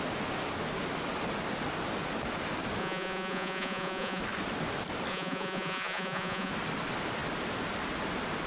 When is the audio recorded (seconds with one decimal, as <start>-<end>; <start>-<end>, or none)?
0.0-2.8; 4.2-5.1; 6.5-8.5